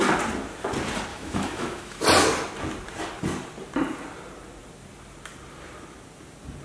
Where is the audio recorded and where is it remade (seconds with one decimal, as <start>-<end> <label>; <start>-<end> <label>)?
0.0-1.1 recorded; 1.1-2.0 remade; 2.0-6.6 recorded